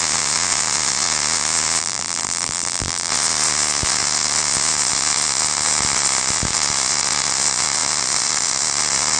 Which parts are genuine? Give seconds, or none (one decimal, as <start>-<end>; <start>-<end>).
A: 0.0-1.8; 3.1-9.2